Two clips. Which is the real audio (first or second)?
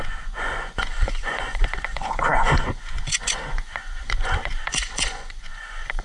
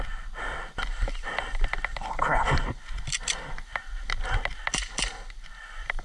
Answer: second